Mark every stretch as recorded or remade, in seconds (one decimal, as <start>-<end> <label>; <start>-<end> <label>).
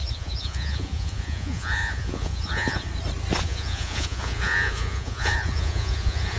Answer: 0.0-2.9 remade; 2.9-3.4 recorded; 3.4-6.4 remade